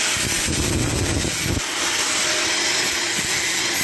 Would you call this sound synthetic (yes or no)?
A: no